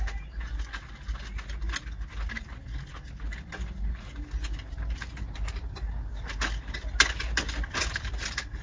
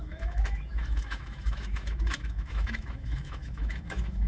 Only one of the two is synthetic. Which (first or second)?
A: second